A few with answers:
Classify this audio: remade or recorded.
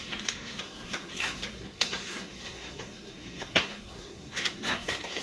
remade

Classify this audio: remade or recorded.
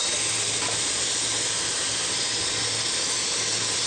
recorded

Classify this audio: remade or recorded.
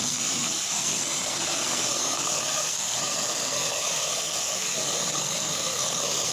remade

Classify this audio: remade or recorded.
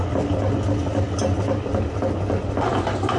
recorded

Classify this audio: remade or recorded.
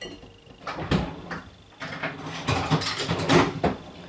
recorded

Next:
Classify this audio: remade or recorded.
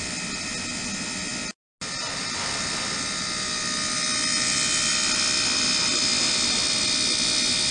recorded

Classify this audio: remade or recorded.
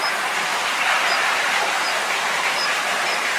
recorded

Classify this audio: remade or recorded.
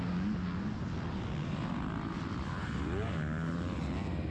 recorded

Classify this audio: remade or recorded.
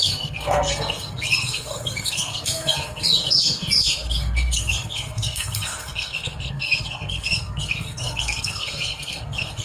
remade